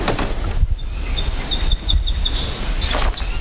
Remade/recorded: recorded